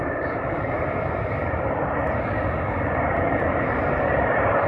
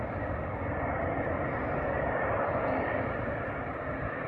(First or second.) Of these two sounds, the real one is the second